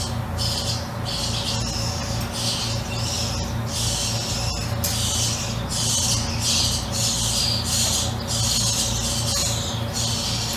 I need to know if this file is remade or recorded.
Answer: recorded